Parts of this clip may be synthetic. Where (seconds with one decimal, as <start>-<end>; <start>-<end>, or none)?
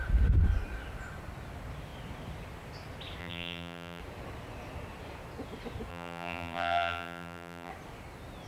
3.2-4.0; 5.9-7.7